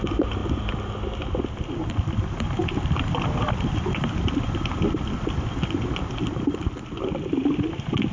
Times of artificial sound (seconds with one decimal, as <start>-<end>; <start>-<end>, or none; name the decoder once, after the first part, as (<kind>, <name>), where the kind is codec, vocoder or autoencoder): none